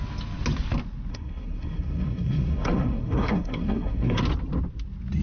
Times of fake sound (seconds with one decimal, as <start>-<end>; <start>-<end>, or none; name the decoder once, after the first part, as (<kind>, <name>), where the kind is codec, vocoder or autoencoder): 1.1-4.2 (codec, SNAC)